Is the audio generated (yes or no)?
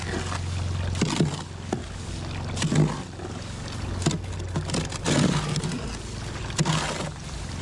no